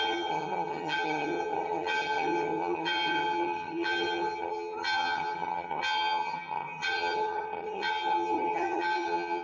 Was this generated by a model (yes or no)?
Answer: yes